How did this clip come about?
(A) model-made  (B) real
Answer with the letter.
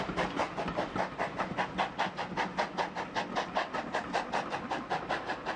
B